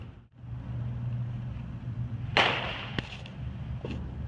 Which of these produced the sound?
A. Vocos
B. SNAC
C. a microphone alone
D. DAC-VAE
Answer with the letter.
C